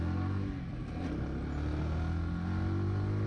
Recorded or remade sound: recorded